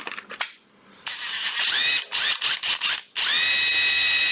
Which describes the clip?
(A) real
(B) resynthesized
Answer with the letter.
A